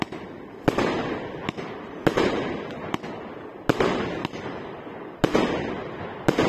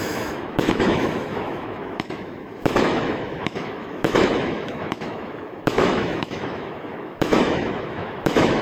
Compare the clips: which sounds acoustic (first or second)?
first